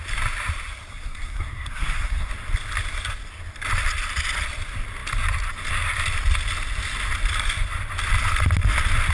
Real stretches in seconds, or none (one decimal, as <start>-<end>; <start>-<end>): 0.0-0.9; 2.3-9.1